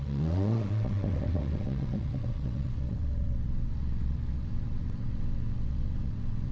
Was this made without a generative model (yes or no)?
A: no